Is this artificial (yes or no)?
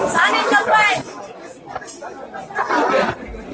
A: no